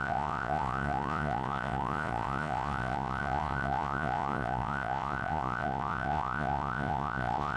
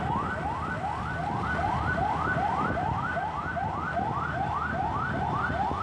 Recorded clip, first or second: second